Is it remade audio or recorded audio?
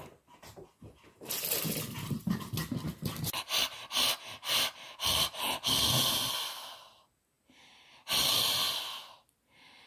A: recorded